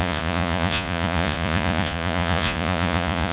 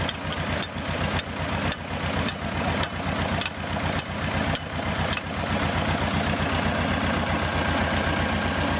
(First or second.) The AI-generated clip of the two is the first